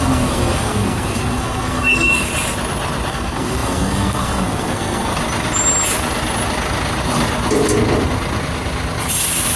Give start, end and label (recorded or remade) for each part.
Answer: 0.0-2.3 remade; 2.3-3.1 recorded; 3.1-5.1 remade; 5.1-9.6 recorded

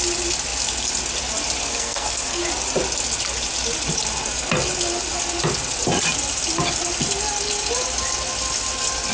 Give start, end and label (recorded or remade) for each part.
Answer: 0.0-1.6 recorded; 1.6-2.4 remade; 2.4-9.1 recorded

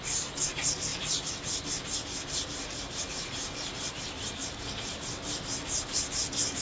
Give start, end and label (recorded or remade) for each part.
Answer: 0.0-6.6 recorded

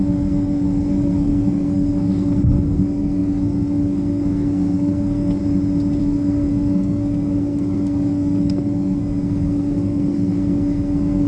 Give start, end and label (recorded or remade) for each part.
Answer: 0.0-5.4 remade; 5.4-6.0 recorded; 6.0-11.3 remade

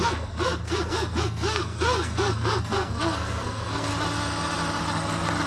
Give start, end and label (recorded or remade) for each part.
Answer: 0.0-3.9 remade; 3.9-5.5 recorded

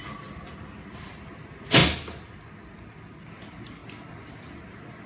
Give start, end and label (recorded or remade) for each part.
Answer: 0.0-5.1 recorded

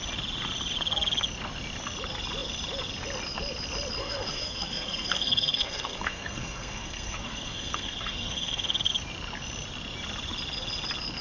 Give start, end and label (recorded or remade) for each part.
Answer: 0.0-4.0 recorded; 4.0-8.9 remade; 8.9-11.2 recorded

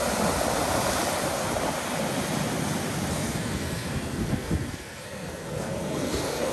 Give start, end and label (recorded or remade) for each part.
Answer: 0.0-3.1 recorded; 3.1-6.5 remade